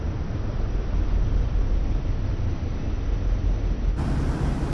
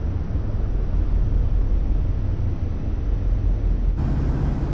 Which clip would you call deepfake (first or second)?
first